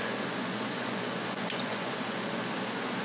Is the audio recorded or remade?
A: remade